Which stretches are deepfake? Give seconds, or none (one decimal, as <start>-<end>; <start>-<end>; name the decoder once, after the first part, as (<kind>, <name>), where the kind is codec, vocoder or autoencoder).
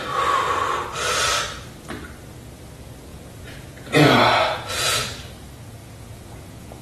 3.1-4.7 (vocoder, Vocos); 5.8-6.8